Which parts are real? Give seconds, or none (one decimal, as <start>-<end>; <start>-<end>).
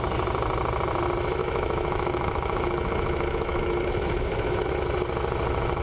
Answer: 0.0-1.4; 4.7-5.8